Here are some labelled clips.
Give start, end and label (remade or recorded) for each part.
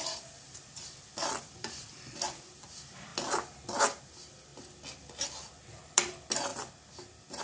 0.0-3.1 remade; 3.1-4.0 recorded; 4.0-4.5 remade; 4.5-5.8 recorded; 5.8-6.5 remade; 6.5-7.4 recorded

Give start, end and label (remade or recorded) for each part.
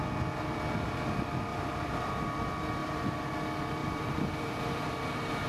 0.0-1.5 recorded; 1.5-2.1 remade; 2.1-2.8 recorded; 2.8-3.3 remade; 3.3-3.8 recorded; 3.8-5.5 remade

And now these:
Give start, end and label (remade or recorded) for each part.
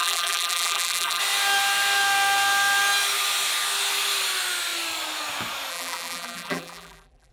0.0-1.2 remade; 1.2-5.7 recorded; 5.7-7.3 remade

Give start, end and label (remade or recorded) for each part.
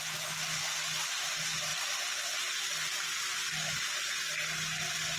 0.0-5.2 recorded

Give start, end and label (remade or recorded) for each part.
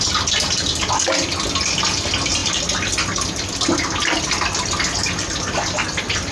0.0-2.4 recorded; 2.4-3.8 remade; 3.8-5.0 recorded; 5.0-6.3 remade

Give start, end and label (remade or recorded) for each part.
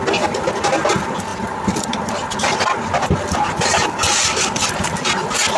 0.0-1.3 recorded; 1.3-4.7 remade; 4.7-5.6 recorded